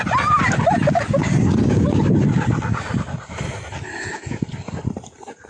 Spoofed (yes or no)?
no